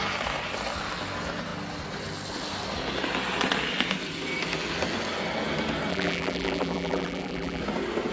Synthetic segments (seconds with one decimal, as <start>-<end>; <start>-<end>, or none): 5.9-7.6